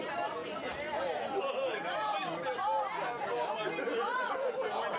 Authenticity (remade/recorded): recorded